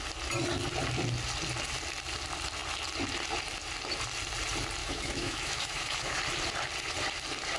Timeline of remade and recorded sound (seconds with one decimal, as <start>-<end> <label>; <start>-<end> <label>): 0.0-4.8 recorded; 4.8-6.2 remade; 6.2-7.6 recorded